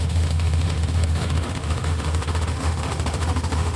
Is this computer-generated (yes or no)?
yes